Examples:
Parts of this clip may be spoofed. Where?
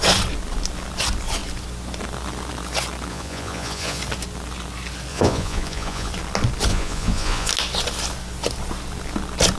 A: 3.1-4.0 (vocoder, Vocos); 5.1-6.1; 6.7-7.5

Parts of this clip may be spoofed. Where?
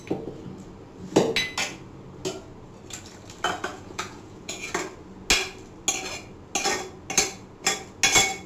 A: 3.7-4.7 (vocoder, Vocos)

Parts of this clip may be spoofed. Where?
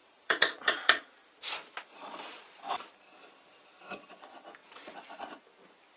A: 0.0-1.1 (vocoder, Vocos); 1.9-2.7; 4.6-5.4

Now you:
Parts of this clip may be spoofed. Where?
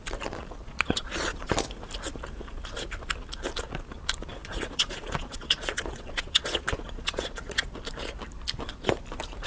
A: 0.6-1.5 (vocoder, Vocos); 4.4-7.7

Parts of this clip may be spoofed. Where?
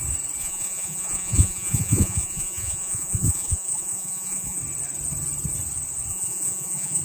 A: 0.4-4.6 (vocoder, Vocos); 6.1-7.0